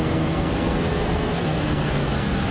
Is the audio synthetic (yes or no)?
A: yes